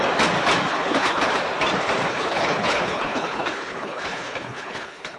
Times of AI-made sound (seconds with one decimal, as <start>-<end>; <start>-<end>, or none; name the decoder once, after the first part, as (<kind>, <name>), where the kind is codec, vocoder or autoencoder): 0.7-1.2 (codec, HILCodec); 2.1-5.2

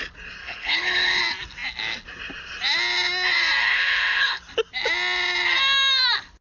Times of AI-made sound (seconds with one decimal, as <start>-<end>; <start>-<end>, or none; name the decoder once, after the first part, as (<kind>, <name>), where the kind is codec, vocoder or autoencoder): 0.4-1.2 (codec, HILCodec); 3.6-4.4

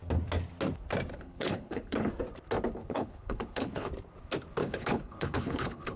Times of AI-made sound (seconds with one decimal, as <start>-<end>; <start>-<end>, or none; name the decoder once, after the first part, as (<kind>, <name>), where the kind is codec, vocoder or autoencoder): 1.1-2.1 (codec, HILCodec); 2.8-3.9; 4.6-6.0

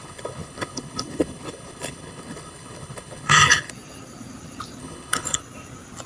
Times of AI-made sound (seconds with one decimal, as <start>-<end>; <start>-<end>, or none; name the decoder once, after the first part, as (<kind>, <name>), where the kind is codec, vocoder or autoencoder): 0.0-3.7 (codec, HILCodec); 4.8-5.4

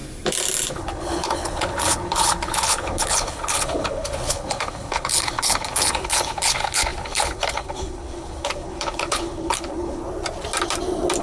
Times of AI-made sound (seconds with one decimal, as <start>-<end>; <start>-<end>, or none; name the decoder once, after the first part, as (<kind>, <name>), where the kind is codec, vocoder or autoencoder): 0.7-10.0 (codec, HILCodec)